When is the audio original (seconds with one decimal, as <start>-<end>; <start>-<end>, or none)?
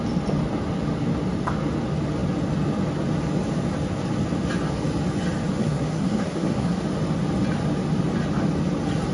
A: 0.0-5.6; 6.8-9.1